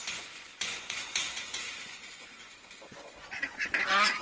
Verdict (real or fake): fake